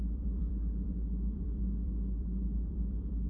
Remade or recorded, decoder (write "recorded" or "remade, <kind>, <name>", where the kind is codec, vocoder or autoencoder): remade, vocoder, BigVGAN v2